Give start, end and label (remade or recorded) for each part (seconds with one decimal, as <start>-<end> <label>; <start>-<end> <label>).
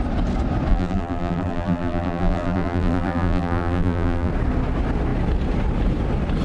0.0-0.7 recorded; 0.7-4.3 remade; 4.3-6.4 recorded